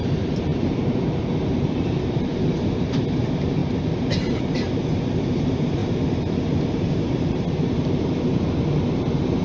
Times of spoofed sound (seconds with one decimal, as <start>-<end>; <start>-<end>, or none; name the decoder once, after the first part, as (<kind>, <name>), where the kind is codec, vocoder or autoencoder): 0.0-3.6 (vocoder, BigVGAN v2); 4.1-5.8; 6.9-9.4